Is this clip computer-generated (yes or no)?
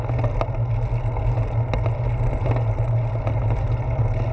no